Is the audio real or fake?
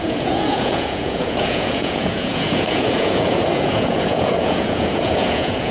fake